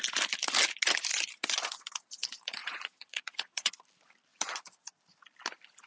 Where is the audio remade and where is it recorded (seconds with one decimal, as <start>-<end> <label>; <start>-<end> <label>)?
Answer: 0.0-2.6 recorded; 2.6-3.7 remade; 3.7-5.9 recorded